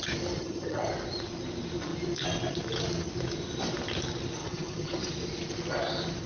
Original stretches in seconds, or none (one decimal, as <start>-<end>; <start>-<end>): 0.0-0.4; 0.9-4.4; 5.1-6.3